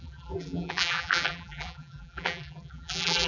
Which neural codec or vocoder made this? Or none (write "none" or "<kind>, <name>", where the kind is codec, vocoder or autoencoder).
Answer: vocoder, BigVGAN v2